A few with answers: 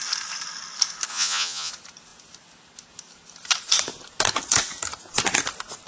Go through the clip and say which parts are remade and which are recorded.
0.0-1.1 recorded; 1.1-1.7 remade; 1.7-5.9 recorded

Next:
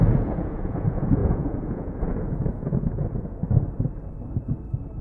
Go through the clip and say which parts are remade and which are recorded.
0.0-3.4 remade; 3.4-5.0 recorded

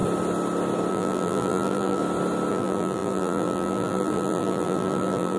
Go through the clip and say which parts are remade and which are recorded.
0.0-0.9 recorded; 0.9-2.0 remade; 2.0-2.5 recorded; 2.5-5.4 remade

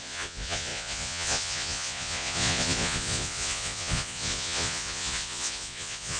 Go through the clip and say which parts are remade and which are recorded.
0.0-6.2 remade

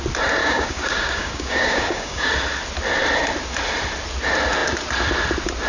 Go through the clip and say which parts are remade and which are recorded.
0.0-0.4 recorded; 0.4-2.3 remade; 2.3-5.7 recorded

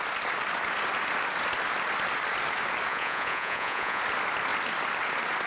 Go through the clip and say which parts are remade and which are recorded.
0.0-2.9 recorded; 2.9-4.0 remade; 4.0-5.5 recorded